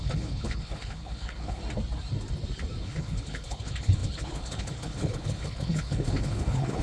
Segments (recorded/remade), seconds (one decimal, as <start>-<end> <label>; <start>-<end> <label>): 0.0-1.6 remade; 1.6-2.8 recorded; 2.8-6.8 remade